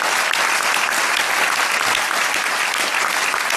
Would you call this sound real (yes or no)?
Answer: yes